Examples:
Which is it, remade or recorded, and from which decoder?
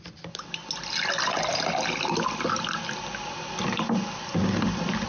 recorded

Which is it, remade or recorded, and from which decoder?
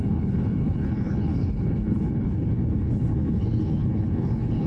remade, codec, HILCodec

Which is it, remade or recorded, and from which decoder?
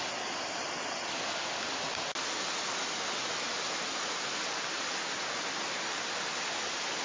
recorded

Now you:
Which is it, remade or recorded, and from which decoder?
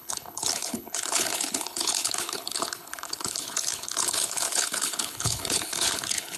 remade, codec, HILCodec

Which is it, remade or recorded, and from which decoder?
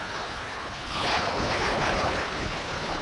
remade, codec, HILCodec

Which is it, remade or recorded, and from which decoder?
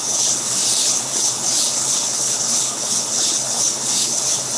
remade, codec, HILCodec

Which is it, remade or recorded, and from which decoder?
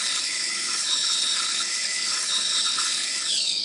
remade, codec, HILCodec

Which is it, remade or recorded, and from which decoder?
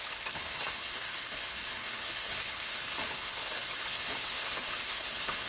remade, codec, HILCodec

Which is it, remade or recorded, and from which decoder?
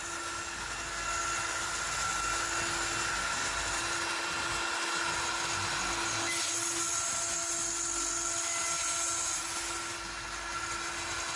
recorded